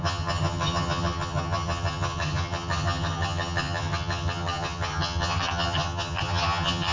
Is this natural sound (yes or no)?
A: no